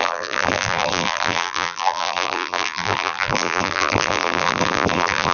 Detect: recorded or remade remade